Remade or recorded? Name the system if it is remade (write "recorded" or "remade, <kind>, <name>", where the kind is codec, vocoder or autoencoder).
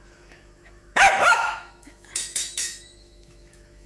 remade, autoencoder, DAC-VAE